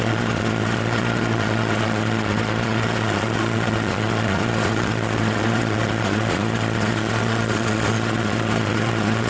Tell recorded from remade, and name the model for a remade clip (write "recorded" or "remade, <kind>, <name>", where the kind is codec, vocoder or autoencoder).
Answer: remade, vocoder, Vocos